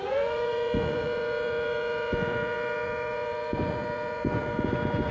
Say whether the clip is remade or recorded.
remade